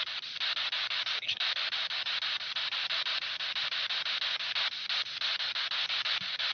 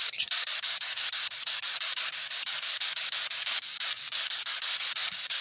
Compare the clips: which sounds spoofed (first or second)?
second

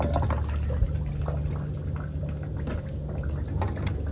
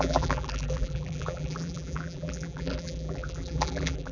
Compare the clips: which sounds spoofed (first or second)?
second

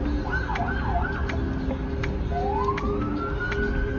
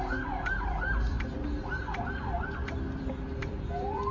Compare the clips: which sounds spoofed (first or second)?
second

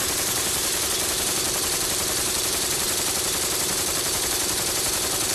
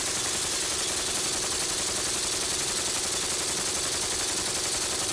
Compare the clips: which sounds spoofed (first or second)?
first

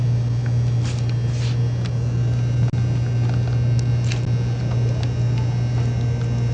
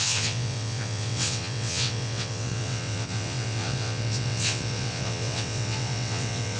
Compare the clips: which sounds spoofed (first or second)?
second